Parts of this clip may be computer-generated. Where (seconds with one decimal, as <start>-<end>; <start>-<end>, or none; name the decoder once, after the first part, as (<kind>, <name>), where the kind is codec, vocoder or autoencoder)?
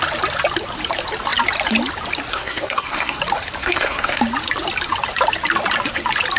2.3-3.2 (codec, SNAC); 3.6-4.2